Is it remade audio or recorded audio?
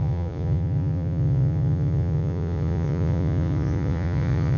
remade